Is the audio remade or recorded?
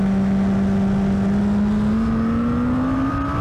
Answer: recorded